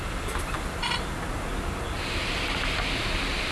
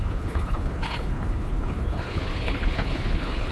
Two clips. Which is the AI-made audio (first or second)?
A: second